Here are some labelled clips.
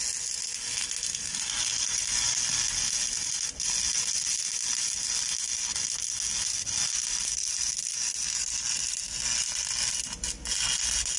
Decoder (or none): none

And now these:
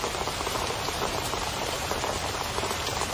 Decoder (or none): vocoder, BigVGAN v2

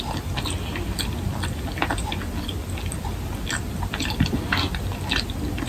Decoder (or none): none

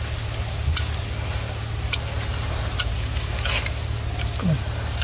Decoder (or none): none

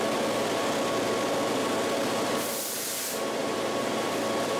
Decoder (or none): none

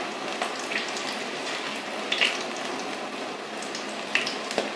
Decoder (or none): none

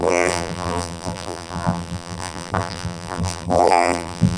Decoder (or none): vocoder, BigVGAN v2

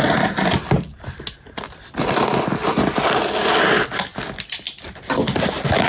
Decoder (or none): none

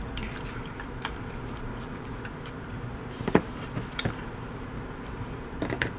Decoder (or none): vocoder, BigVGAN v2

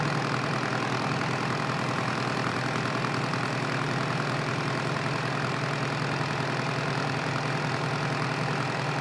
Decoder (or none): none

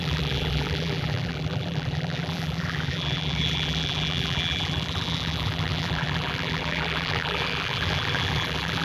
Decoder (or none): vocoder, BigVGAN v2